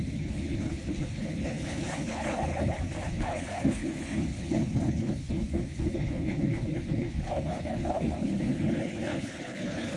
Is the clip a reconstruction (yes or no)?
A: yes